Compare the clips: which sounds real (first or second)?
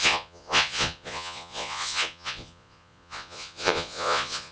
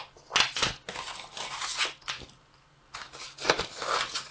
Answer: second